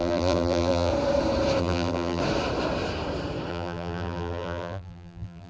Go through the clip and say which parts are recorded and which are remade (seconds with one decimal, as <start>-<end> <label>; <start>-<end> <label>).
0.0-0.9 remade; 0.9-1.6 recorded; 1.6-2.2 remade; 2.2-3.5 recorded; 3.5-5.5 remade